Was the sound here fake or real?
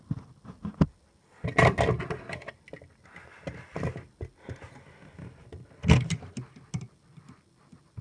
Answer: real